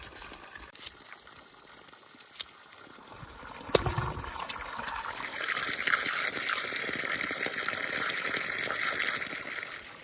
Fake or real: real